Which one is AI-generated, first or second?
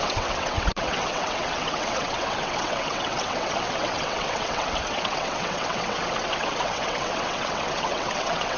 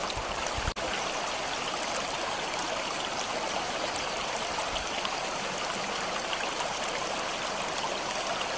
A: first